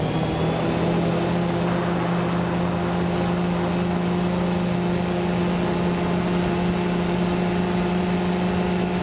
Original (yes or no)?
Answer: yes